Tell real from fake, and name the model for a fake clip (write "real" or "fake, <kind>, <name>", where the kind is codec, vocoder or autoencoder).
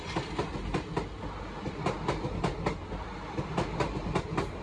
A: real